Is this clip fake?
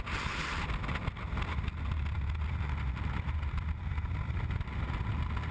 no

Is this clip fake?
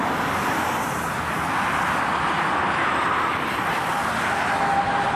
no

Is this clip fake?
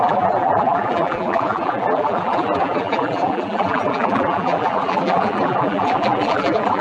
yes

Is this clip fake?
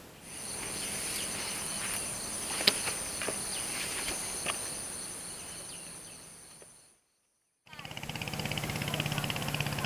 no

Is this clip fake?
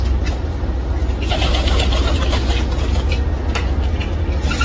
no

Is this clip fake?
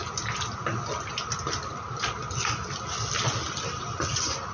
no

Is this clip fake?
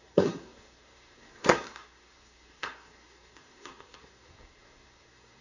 yes